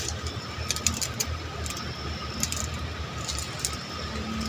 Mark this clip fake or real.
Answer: real